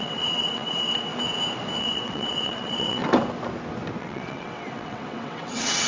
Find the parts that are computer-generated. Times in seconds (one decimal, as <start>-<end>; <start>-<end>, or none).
0.0-1.1; 1.8-3.0; 4.0-5.9